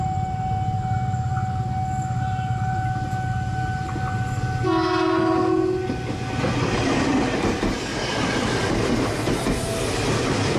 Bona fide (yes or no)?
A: yes